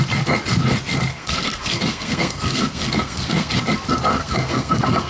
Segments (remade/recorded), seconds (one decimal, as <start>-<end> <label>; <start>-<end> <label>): 0.0-1.1 recorded; 1.1-3.5 remade; 3.5-4.2 recorded; 4.2-5.1 remade